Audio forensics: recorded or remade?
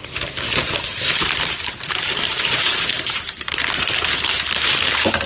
remade